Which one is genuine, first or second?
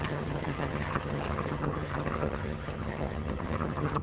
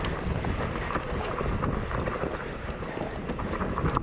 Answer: second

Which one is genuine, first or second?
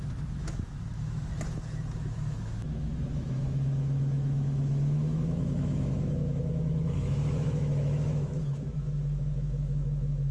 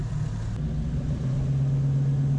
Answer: second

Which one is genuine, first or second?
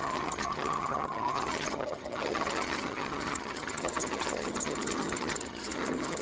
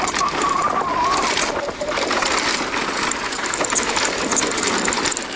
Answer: second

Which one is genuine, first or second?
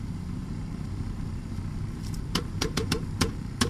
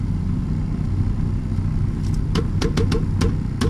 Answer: second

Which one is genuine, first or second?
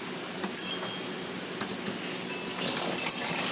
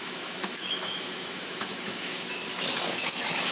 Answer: first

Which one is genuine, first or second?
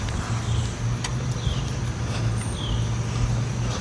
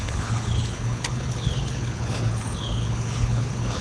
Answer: first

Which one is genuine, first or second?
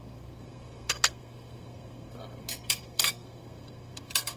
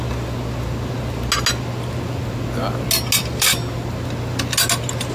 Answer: second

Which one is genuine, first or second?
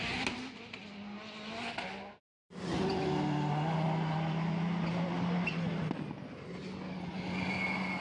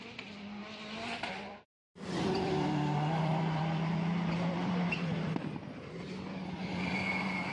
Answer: first